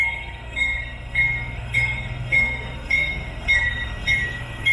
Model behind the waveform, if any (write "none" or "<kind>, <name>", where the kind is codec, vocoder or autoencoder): codec, SNAC